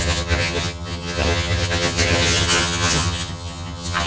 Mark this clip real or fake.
fake